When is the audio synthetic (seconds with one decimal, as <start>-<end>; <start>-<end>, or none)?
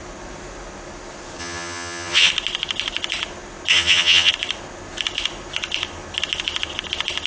1.4-2.3; 3.7-4.3